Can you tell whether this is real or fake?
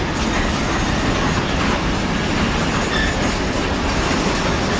real